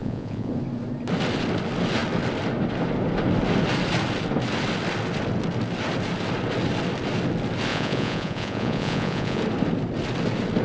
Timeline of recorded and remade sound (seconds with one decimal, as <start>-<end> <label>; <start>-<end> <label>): 0.0-0.5 remade; 0.5-7.7 recorded; 7.7-9.4 remade; 9.4-10.6 recorded